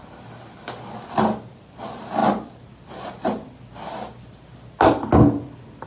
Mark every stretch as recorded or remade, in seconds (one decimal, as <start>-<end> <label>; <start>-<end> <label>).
0.0-2.2 recorded; 2.2-3.1 remade; 3.1-5.9 recorded